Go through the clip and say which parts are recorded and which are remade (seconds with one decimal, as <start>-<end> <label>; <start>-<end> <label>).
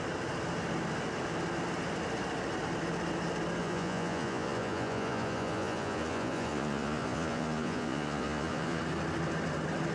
0.0-3.6 recorded; 3.6-8.8 remade; 8.8-9.9 recorded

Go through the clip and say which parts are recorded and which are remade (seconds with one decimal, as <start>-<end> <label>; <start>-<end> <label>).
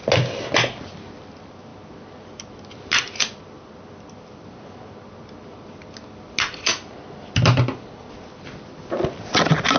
0.0-9.8 recorded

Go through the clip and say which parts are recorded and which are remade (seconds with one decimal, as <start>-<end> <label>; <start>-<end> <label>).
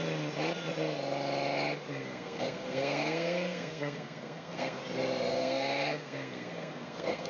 0.0-1.9 recorded; 1.9-4.8 remade; 4.8-5.3 recorded; 5.3-7.3 remade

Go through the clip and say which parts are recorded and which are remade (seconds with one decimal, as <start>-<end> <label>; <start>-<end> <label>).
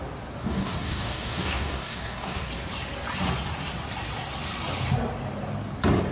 0.0-0.4 recorded; 0.4-2.5 remade; 2.5-6.1 recorded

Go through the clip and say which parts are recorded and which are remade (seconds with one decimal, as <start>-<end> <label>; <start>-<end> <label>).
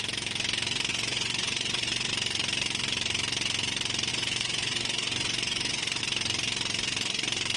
0.0-0.9 recorded; 0.9-2.1 remade; 2.1-4.1 recorded; 4.1-6.0 remade; 6.0-7.6 recorded